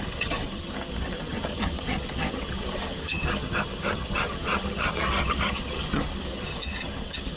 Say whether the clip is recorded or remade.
remade